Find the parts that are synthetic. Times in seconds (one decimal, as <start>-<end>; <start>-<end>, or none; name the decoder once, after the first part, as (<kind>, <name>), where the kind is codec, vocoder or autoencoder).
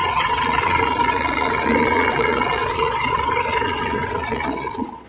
0.0-5.1 (vocoder, Vocos)